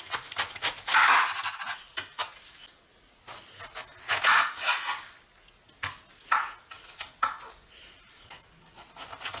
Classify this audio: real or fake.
real